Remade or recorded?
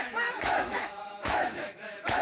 remade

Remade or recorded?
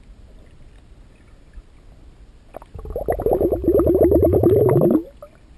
recorded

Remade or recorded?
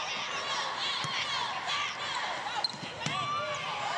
recorded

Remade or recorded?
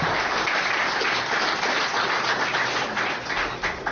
recorded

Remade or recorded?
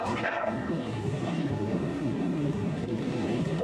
remade